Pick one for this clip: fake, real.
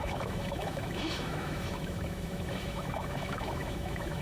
fake